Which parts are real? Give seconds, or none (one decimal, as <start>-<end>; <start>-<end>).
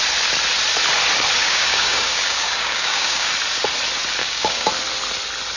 0.0-1.4; 3.3-4.2; 4.7-5.6